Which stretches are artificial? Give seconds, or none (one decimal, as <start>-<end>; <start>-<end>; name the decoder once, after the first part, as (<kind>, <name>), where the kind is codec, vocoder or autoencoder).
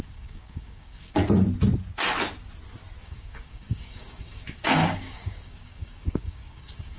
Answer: 0.0-1.2 (codec, DAC); 3.0-7.0